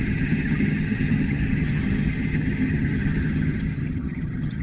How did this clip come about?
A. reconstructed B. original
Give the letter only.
A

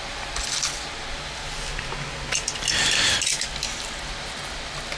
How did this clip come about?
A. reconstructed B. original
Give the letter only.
B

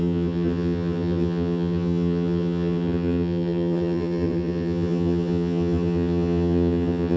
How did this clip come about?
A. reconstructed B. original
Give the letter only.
A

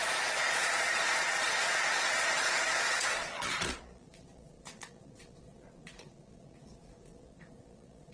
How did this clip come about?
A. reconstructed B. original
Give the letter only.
A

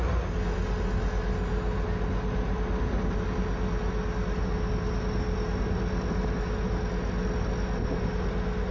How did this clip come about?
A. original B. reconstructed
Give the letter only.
A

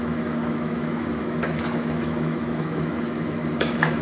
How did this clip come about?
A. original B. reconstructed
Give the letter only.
B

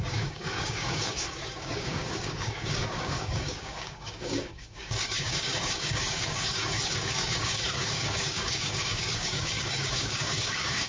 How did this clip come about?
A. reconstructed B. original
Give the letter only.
A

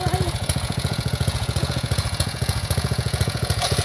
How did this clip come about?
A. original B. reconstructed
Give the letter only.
B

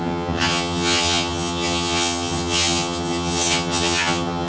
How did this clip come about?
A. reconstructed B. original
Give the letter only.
A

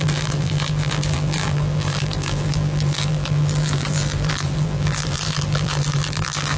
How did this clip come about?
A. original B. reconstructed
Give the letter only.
B